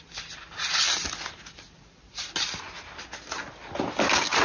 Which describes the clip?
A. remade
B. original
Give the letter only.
B